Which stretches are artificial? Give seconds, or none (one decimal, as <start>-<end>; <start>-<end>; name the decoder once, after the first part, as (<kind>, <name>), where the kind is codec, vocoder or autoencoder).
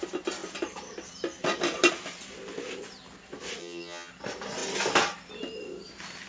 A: 3.6-4.1 (vocoder, HiFi-GAN)